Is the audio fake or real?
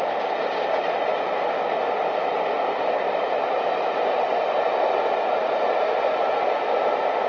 real